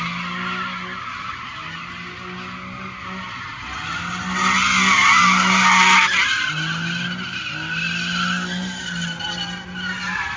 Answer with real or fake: real